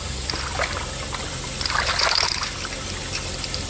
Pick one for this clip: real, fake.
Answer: real